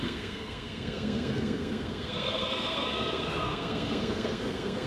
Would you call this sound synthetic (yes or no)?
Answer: yes